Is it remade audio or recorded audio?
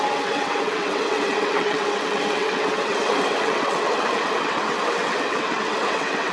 remade